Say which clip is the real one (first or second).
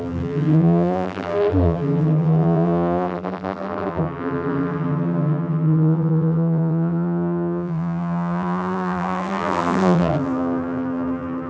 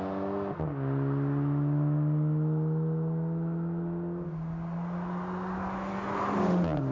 second